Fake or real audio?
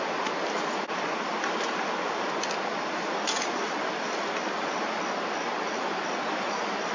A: real